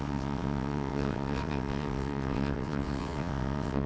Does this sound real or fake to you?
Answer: fake